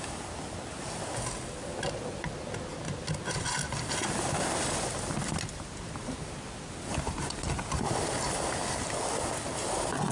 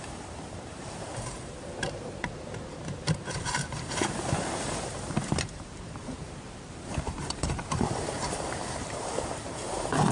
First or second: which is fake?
second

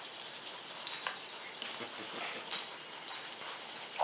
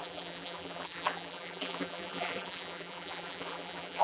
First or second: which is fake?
second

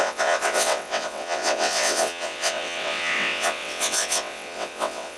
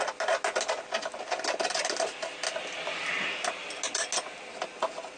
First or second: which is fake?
first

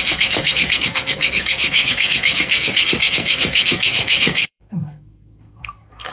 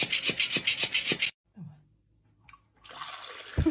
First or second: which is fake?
first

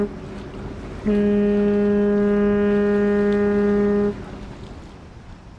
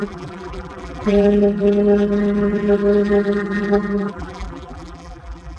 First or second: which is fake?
second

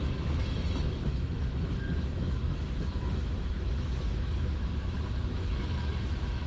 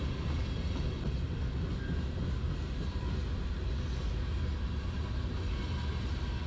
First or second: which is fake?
first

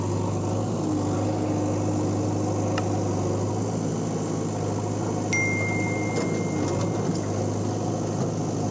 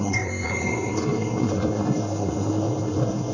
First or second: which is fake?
second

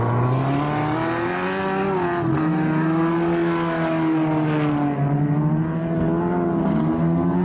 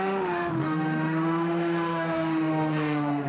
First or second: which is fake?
second